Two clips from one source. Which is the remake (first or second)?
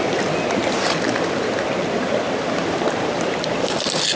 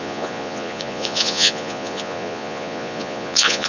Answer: second